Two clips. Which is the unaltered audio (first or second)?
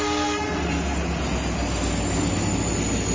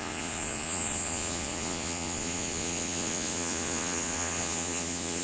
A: first